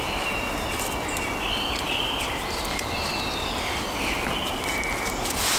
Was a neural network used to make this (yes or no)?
no